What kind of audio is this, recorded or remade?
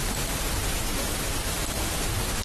recorded